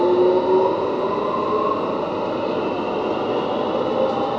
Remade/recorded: recorded